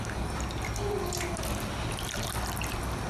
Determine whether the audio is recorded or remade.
recorded